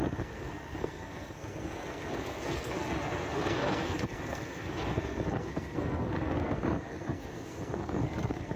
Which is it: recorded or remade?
remade